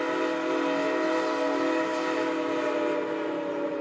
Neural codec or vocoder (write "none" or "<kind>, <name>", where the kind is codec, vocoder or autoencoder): none